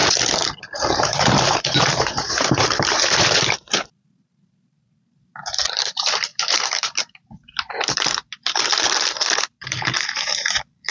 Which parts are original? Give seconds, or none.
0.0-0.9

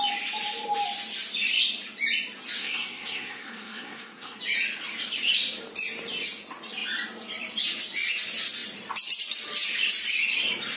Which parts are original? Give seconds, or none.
0.0-2.6; 4.4-10.8

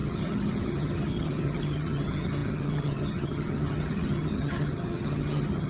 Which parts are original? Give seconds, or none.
none

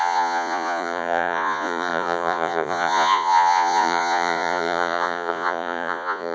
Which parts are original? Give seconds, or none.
none